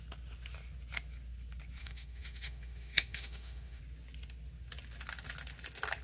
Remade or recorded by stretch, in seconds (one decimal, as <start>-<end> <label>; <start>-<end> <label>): 0.0-1.8 recorded; 1.8-3.8 remade; 3.8-6.0 recorded